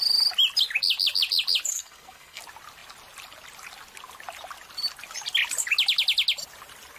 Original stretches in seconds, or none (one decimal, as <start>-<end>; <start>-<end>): 0.0-1.7; 2.4-7.0